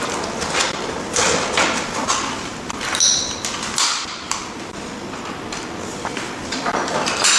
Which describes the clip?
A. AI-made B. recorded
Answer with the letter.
B